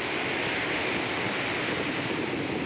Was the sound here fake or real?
real